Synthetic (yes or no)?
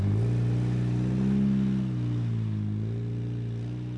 no